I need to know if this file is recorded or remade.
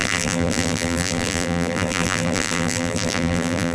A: remade